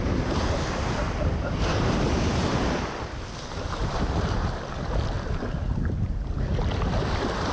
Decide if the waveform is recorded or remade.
remade